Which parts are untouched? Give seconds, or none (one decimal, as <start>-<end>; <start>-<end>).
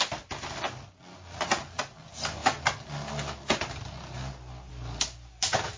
0.0-5.8